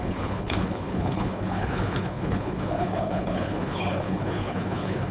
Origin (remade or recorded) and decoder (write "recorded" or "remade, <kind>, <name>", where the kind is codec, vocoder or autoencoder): remade, codec, HILCodec